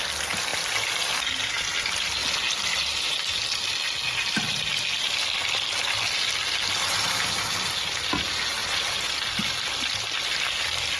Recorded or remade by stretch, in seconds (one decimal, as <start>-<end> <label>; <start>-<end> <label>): 0.0-11.0 recorded